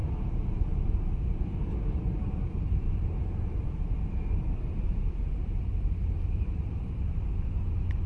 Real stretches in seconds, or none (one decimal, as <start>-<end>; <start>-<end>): none